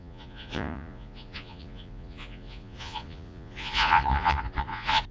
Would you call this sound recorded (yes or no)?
no